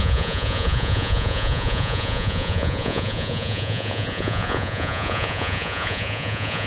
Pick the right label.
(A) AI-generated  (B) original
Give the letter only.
A